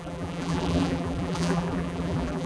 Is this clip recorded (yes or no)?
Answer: no